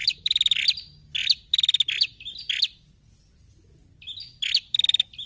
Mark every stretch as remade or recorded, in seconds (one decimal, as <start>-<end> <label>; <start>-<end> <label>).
0.0-5.3 recorded